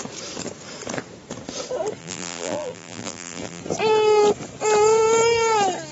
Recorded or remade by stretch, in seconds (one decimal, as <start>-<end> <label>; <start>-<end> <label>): 0.0-2.0 recorded; 2.0-3.6 remade; 3.6-5.9 recorded